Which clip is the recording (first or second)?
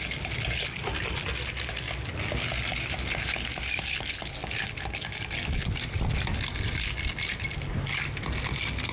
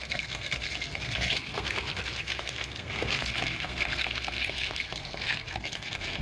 first